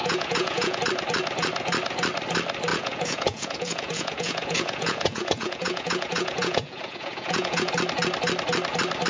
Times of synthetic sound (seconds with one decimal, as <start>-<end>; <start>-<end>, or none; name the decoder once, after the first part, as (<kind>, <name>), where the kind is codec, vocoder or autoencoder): 0.0-0.8 (vocoder, Vocos); 2.7-7.7